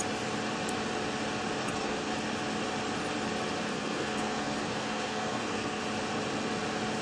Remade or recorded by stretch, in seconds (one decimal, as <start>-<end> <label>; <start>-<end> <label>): 0.0-1.6 recorded; 1.6-2.1 remade; 2.1-3.7 recorded; 3.7-5.8 remade; 5.8-7.0 recorded